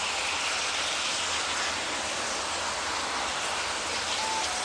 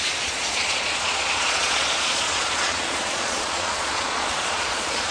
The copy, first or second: second